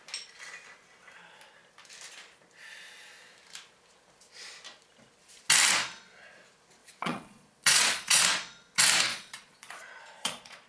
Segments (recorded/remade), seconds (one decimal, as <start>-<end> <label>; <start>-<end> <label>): 0.0-6.8 recorded; 6.8-8.2 remade; 8.2-9.1 recorded; 9.1-10.7 remade